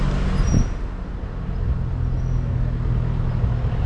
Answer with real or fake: real